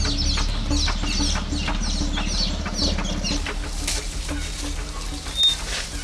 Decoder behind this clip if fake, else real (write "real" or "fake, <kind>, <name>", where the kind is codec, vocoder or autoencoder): real